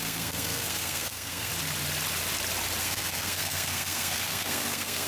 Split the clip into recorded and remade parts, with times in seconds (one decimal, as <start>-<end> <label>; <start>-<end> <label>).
0.0-1.5 remade; 1.5-2.8 recorded; 2.8-5.1 remade